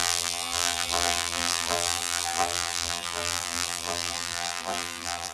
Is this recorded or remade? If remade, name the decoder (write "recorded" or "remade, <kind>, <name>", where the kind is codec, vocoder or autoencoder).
remade, vocoder, BigVGAN v2